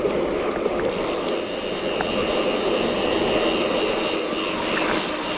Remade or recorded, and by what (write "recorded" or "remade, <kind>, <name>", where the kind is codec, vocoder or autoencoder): recorded